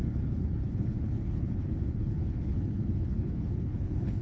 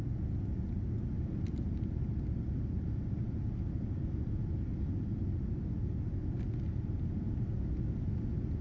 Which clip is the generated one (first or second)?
first